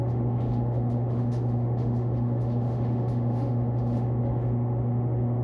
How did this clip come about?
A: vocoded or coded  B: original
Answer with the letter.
A